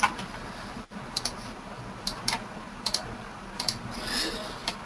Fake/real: real